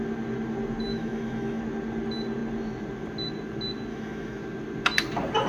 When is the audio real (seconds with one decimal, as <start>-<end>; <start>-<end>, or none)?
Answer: 0.0-0.9; 1.6-3.9; 4.4-5.5